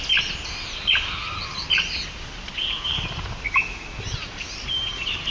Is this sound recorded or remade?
recorded